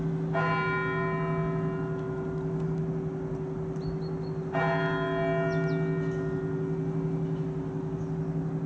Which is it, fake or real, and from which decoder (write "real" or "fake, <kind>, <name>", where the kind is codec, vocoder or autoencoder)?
real